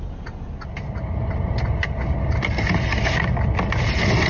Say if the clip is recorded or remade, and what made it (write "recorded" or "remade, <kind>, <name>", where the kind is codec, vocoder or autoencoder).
recorded